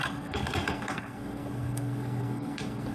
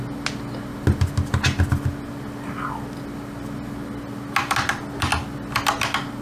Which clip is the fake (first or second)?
first